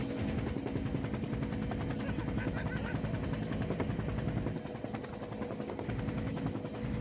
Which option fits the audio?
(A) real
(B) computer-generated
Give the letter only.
A